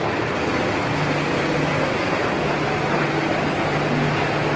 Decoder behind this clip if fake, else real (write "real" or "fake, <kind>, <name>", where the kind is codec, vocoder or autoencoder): real